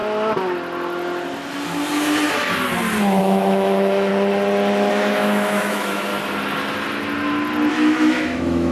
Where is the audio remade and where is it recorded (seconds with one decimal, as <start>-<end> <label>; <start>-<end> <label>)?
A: 0.0-3.2 recorded; 3.2-4.1 remade; 4.1-4.9 recorded; 4.9-6.1 remade; 6.1-7.7 recorded; 7.7-8.7 remade